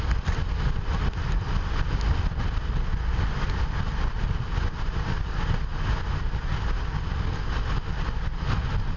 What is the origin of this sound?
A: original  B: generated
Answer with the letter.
A